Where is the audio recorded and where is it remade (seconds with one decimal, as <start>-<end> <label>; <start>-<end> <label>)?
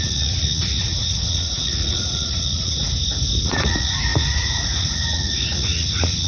0.0-2.8 remade; 2.8-3.4 recorded; 3.4-6.3 remade